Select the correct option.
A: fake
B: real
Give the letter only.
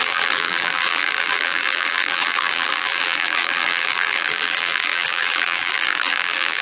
A